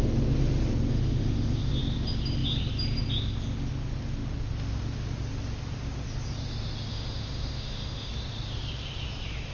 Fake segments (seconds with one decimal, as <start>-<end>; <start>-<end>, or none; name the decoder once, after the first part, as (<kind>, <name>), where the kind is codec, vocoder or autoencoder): 0.9-1.7 (autoencoder, DAC-VAE); 6.9-8.1

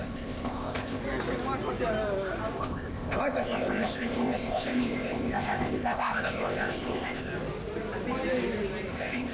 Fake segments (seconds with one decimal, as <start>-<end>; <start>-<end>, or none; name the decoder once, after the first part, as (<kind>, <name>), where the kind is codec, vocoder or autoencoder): 0.0-1.0 (codec, ZipCodec); 2.6-7.3; 8.9-9.3

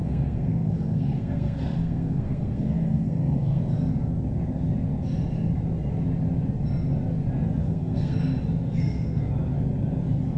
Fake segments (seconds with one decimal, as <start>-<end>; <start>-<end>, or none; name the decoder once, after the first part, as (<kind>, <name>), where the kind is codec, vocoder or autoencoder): 0.0-3.6 (codec, SNAC); 7.6-8.2; 8.7-9.3

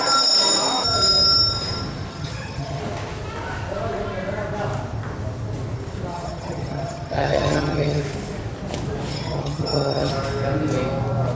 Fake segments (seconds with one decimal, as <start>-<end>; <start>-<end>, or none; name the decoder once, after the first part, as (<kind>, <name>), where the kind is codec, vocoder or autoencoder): 2.1-2.8 (vocoder, HiFi-GAN); 6.1-8.0; 9.1-10.1

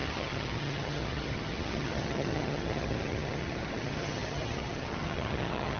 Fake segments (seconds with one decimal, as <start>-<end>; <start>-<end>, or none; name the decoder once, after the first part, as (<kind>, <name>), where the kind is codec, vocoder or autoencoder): 0.0-5.8 (vocoder, HiFi-GAN)